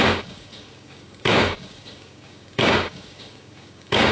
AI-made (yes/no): yes